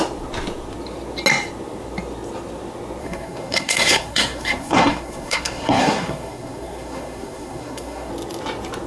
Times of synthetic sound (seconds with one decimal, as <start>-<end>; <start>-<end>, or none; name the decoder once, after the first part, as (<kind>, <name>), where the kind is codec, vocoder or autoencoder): 3.0-8.1 (codec, SNAC)